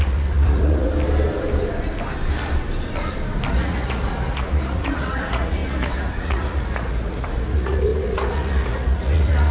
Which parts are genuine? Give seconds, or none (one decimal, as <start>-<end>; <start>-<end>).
0.9-3.5